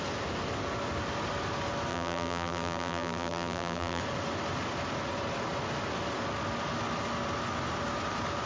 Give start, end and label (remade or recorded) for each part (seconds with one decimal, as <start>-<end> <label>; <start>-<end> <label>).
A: 0.0-1.9 recorded; 1.9-4.0 remade; 4.0-8.5 recorded